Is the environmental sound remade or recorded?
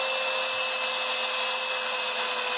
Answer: recorded